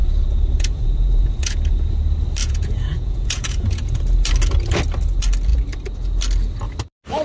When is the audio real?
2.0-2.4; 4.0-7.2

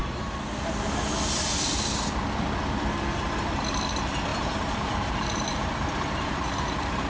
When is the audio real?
0.0-4.3; 6.5-7.1

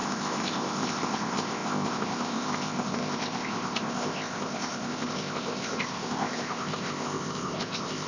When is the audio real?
none

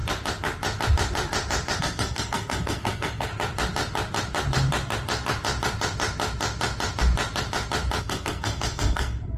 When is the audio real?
0.0-1.8; 3.3-8.0